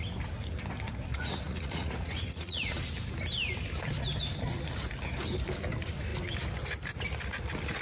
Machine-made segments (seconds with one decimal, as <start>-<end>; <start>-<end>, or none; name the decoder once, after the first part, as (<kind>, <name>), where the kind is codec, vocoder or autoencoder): 1.1-2.9 (vocoder, Vocos)